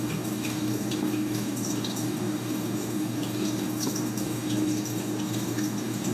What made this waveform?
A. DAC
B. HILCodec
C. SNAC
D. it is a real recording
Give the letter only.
A